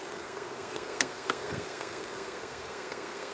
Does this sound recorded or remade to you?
remade